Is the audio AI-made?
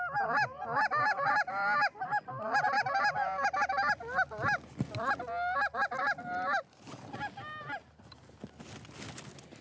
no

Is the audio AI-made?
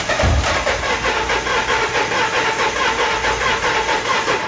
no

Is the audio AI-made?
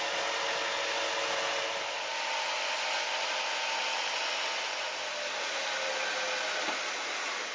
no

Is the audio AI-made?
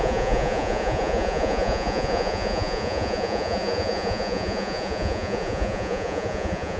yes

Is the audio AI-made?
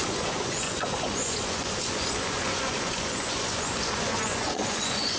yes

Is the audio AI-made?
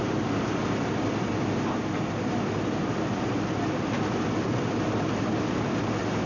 no